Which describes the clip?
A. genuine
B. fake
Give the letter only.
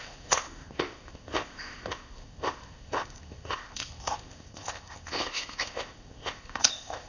B